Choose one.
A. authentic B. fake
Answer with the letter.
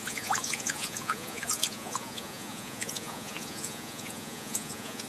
B